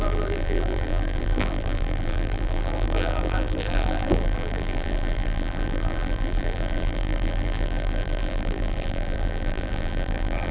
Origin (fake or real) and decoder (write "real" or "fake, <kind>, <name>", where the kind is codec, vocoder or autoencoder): fake, vocoder, BigVGAN v2